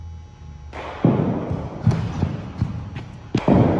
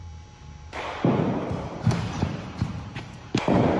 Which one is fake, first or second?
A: second